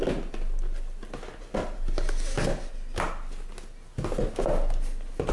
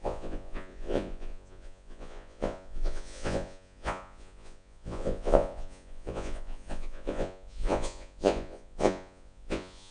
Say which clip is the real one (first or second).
first